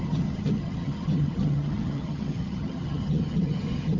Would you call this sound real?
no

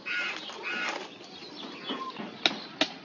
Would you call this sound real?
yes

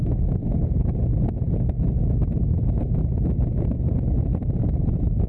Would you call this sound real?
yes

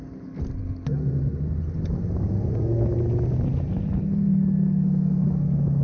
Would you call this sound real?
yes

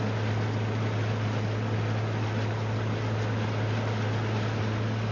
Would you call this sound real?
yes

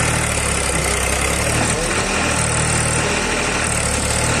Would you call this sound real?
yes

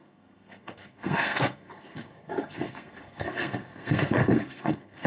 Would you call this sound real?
no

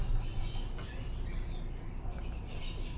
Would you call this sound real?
yes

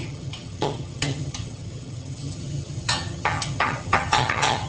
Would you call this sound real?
no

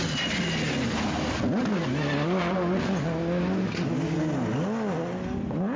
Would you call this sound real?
yes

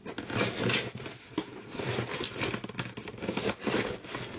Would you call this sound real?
yes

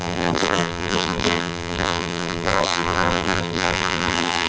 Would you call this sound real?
no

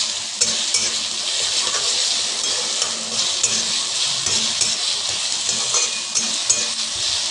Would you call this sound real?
yes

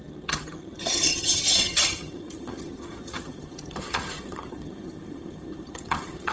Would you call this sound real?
no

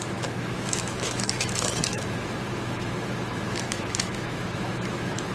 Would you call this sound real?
no